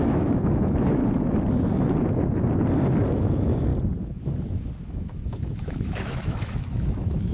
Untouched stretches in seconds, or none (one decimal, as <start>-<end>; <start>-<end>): 1.0-3.1; 3.7-4.9